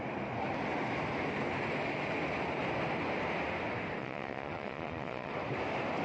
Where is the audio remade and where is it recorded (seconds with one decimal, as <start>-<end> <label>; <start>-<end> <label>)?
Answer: 0.0-4.0 recorded; 4.0-5.3 remade; 5.3-6.0 recorded